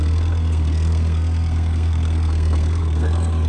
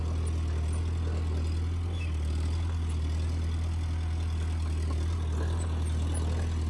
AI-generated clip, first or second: first